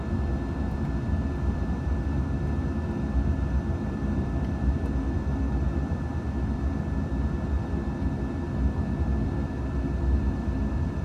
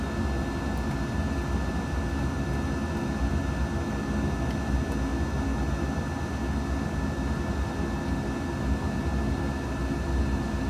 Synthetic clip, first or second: first